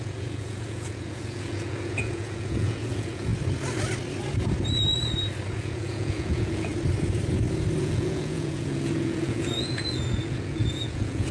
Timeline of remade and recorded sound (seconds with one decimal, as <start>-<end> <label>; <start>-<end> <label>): 0.0-3.3 remade; 3.3-5.5 recorded; 5.5-6.7 remade; 6.7-7.8 recorded; 7.8-11.3 remade